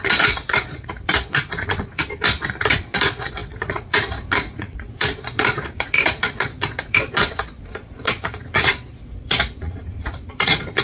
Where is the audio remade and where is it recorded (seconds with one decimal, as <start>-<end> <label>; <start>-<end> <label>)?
0.0-2.0 remade; 2.0-2.6 recorded; 2.6-10.8 remade